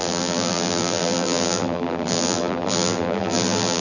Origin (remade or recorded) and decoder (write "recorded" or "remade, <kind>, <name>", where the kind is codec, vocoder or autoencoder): remade, vocoder, BigVGAN v2